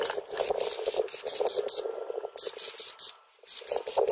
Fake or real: real